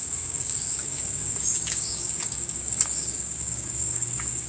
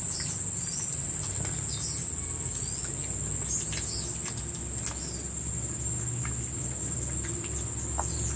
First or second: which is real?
second